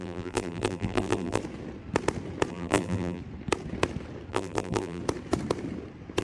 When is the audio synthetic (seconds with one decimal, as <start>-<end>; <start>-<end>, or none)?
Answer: 0.0-1.4; 2.5-3.2; 4.3-5.0